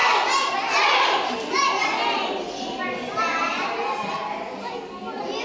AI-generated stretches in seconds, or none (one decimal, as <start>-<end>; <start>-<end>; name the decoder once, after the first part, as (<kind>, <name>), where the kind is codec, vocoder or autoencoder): none